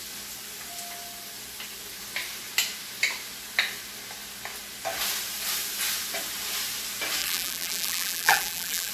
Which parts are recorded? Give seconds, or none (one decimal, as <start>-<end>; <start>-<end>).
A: 0.0-7.2